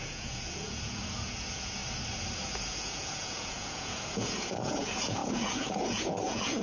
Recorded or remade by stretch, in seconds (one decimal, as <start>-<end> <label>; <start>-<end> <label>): 0.0-1.8 remade; 1.8-2.4 recorded; 2.4-6.6 remade